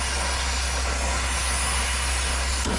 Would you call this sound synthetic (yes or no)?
no